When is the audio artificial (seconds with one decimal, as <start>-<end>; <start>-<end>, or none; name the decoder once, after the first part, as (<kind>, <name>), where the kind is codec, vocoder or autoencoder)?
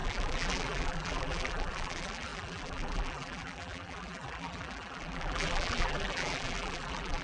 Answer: 0.0-7.2 (vocoder, BigVGAN v2)